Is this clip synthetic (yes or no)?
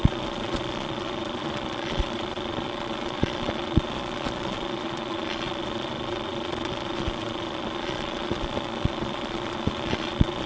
yes